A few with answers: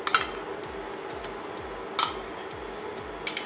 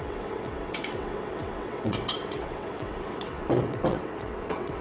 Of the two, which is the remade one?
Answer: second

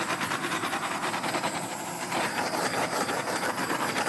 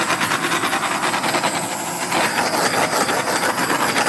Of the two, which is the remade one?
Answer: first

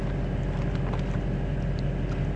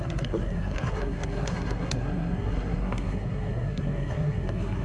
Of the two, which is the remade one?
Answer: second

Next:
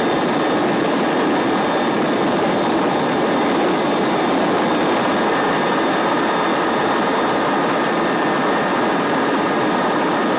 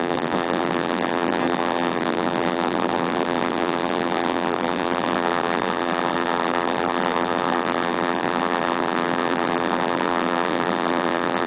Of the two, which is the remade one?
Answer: second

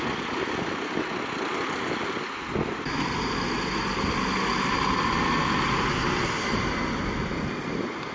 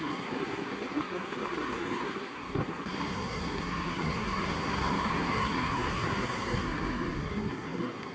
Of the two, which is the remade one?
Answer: second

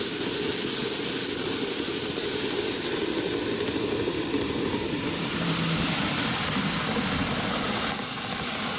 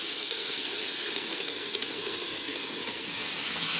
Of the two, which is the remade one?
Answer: second